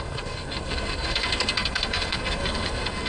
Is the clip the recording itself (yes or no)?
no